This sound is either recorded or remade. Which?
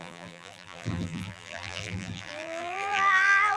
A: remade